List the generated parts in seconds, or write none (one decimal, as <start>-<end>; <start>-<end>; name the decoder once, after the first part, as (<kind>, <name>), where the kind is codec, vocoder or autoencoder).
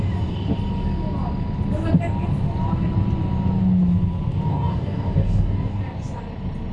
4.5-5.8 (codec, DAC)